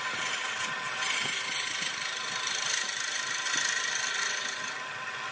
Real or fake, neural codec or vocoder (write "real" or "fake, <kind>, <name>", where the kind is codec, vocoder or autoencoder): real